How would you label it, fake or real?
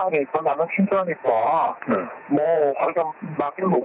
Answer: fake